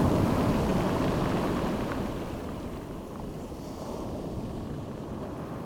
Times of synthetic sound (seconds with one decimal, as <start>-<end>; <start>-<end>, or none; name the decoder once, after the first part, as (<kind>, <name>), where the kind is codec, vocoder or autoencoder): 0.0-0.7 (vocoder, BigVGAN v2); 2.1-5.6

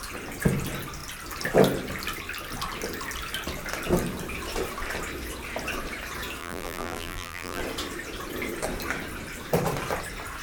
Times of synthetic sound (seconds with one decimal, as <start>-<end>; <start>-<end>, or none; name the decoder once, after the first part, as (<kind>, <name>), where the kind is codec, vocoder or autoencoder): 6.4-7.6 (vocoder, BigVGAN v2)